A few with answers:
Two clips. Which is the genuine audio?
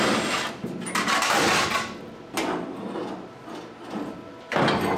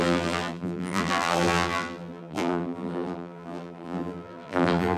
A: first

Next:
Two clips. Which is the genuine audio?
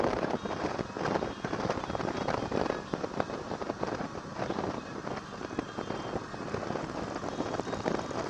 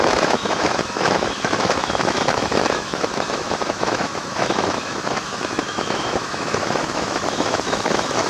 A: first